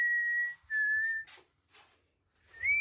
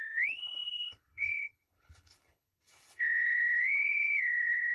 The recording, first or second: first